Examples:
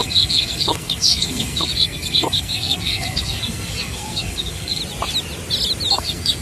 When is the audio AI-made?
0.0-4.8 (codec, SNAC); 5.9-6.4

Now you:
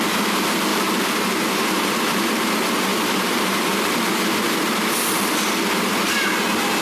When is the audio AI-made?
0.7-2.5 (vocoder, BigVGAN v2); 2.9-4.0

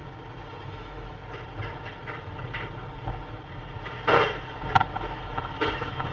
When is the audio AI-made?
0.7-1.2 (autoencoder, DAC-VAE); 4.9-6.1